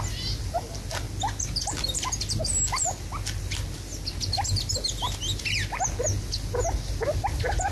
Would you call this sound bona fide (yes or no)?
yes